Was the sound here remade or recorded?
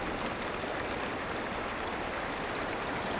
recorded